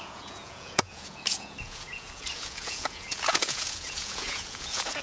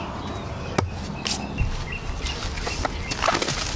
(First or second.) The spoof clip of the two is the first